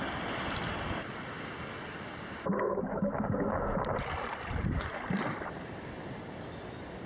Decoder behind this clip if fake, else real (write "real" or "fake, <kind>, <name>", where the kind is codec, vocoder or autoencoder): real